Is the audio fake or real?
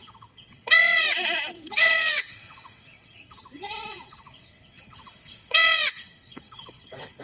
fake